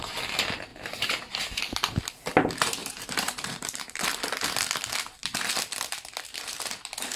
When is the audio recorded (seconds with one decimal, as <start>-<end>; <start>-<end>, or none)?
0.0-2.8; 4.0-7.2